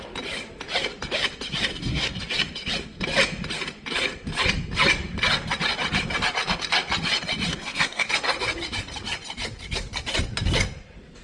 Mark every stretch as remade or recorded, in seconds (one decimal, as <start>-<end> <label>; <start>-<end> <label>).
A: 0.0-1.7 recorded; 1.7-2.2 remade; 2.2-7.5 recorded; 7.5-8.1 remade; 8.1-11.2 recorded